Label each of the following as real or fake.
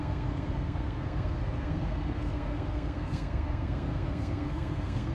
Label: fake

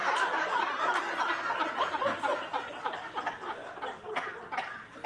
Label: real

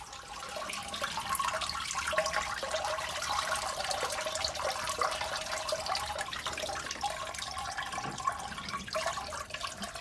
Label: real